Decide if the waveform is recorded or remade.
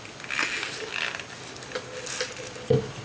recorded